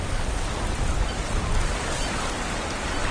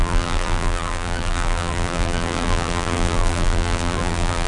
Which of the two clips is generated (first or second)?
second